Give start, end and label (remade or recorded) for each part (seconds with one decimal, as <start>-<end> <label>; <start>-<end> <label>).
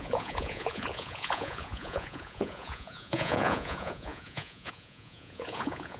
0.0-6.0 remade